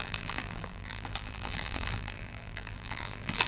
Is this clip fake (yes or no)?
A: yes